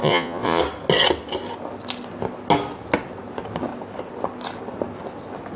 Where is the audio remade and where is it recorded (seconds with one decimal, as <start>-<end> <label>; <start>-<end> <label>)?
0.0-0.6 remade; 0.6-5.6 recorded